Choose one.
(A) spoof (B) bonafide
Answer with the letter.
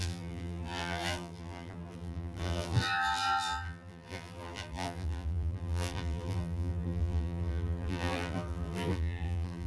A